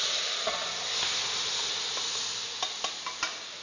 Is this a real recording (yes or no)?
yes